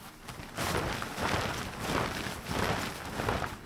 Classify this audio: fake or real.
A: real